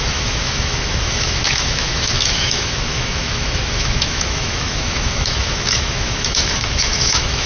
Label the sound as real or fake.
fake